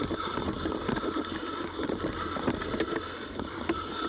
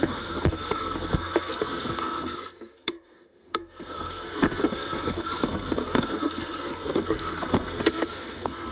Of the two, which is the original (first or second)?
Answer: first